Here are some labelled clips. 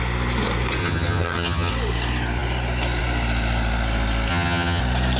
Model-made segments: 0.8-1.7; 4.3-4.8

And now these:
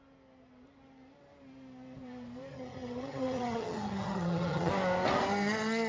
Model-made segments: 2.5-4.7

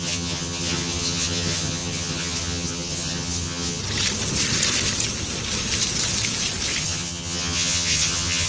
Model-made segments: 0.0-3.8; 6.8-8.5

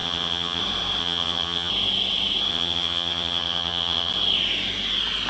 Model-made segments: 0.0-0.6; 1.0-1.7; 2.5-4.1

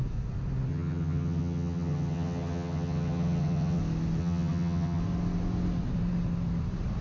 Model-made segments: 0.7-3.8; 4.2-5.0